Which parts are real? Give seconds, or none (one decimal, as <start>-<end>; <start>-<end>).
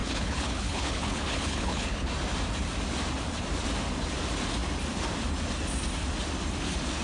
2.1-7.0